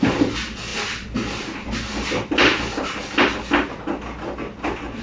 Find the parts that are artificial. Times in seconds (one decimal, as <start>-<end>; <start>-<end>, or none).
none